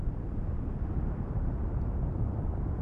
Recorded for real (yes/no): yes